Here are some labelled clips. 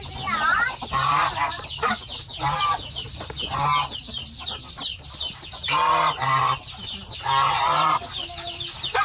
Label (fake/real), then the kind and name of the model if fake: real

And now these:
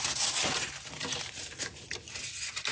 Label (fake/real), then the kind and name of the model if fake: real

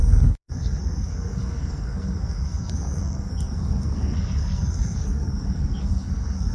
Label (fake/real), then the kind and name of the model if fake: fake, codec, SNAC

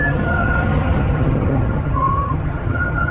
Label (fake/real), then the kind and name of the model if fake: fake, vocoder, HiFi-GAN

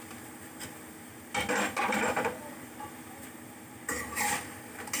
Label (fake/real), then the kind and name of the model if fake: real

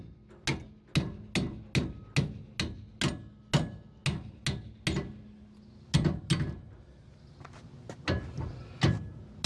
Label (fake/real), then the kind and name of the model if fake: real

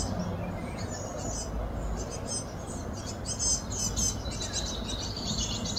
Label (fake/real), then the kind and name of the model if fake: real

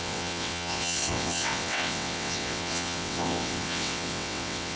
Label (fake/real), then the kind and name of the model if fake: fake, vocoder, WaveNeXt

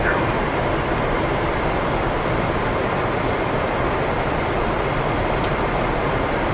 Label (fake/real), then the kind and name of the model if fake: fake, vocoder, BigVGAN v2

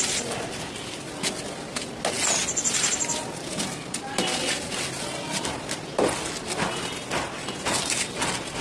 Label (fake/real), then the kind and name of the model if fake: real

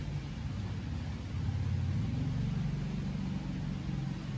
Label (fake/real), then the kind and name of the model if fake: real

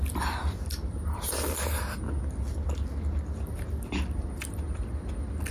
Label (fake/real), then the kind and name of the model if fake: real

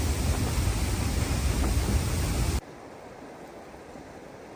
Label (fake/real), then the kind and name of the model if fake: real